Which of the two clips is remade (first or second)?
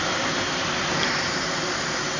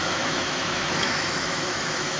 second